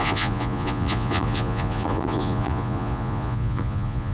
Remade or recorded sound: remade